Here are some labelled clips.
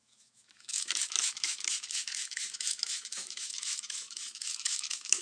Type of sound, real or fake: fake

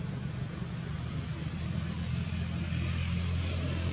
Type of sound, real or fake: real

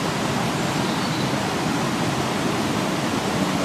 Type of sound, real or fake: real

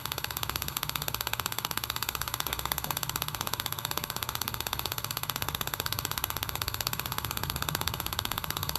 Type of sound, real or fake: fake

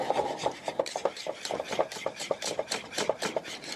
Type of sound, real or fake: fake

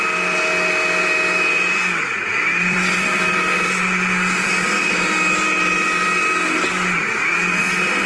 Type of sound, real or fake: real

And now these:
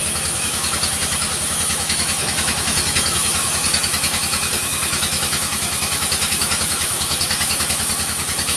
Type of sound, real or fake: fake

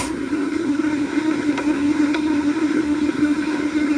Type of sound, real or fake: fake